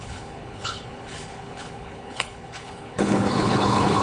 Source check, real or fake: fake